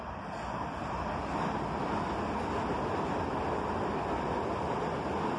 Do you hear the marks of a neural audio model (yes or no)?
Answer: no